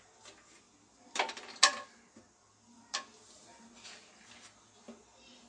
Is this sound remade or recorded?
recorded